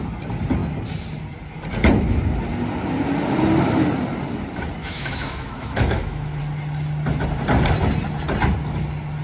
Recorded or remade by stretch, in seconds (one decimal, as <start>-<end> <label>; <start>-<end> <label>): 0.0-4.8 recorded; 4.8-6.4 remade; 6.4-9.2 recorded